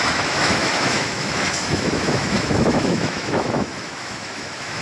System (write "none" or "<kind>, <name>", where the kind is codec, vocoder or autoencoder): autoencoder, DAC-VAE